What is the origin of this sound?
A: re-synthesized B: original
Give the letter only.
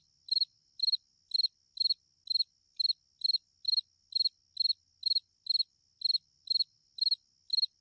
B